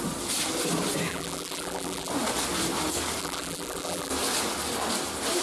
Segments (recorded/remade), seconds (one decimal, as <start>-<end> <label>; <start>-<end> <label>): 0.0-1.1 recorded; 1.1-2.1 remade; 2.1-3.2 recorded; 3.2-4.1 remade; 4.1-5.4 recorded